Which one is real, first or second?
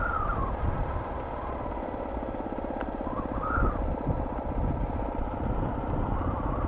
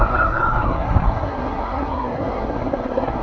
first